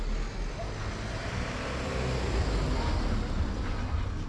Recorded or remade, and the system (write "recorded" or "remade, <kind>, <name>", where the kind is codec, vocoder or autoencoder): recorded